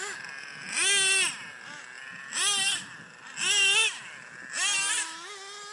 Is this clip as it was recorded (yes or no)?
yes